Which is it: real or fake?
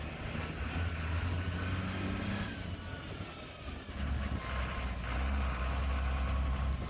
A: real